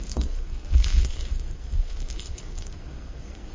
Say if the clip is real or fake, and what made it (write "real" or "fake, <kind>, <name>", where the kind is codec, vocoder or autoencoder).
fake, codec, SNAC